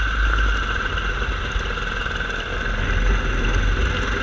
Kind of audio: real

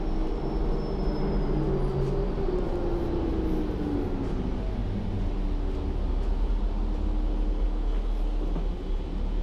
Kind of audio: real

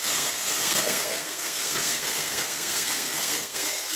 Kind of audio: fake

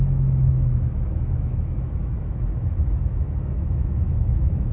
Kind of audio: fake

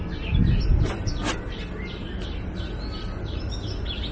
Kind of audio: real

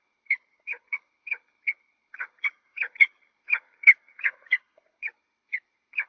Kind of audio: fake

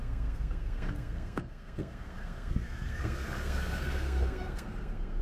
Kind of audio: fake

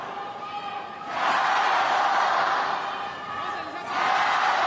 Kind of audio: real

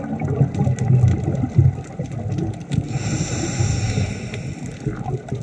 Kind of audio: real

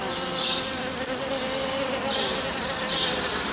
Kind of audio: real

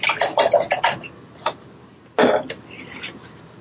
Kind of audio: real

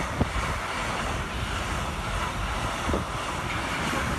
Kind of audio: real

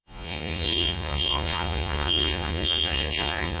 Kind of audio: fake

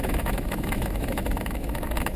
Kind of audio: fake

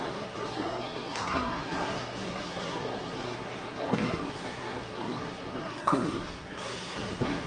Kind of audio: fake